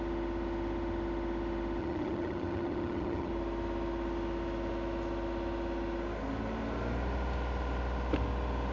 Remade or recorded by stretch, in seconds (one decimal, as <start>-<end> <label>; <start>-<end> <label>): 0.0-1.8 recorded; 1.8-3.3 remade; 3.3-8.7 recorded